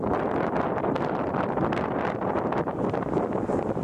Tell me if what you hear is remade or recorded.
recorded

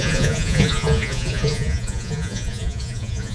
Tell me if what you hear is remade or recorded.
remade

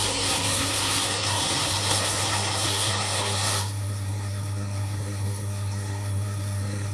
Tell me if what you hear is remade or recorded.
remade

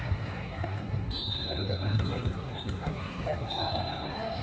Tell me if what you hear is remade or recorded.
remade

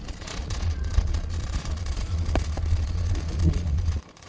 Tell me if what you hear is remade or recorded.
remade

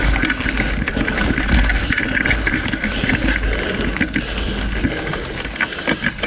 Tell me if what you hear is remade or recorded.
recorded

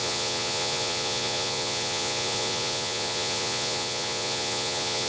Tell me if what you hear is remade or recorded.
remade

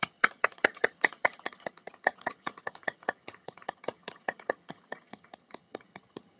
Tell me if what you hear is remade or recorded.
remade